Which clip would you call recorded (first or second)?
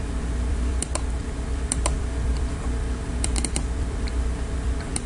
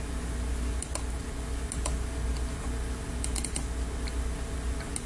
second